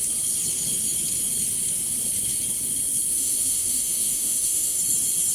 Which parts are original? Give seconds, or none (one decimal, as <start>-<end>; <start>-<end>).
0.0-3.1; 4.8-5.3